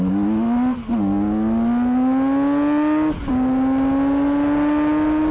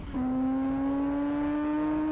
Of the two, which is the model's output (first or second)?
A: second